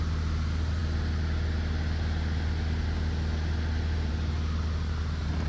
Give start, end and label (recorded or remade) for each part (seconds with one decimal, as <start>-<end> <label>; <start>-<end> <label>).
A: 0.0-5.5 recorded